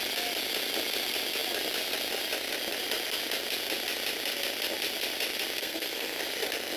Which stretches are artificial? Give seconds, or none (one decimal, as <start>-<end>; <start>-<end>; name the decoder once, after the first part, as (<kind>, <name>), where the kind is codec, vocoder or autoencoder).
5.6-6.2 (codec, SNAC)